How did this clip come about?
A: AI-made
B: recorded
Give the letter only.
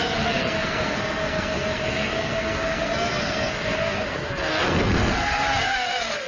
A